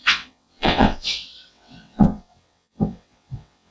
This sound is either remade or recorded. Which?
remade